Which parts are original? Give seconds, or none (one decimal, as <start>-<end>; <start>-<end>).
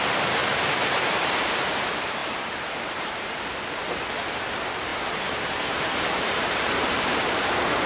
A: 0.0-0.4; 1.8-2.2; 3.4-4.9